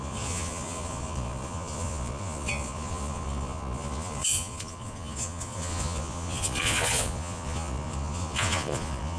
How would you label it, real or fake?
fake